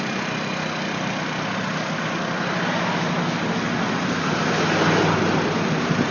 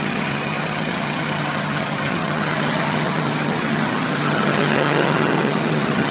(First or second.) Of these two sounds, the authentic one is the first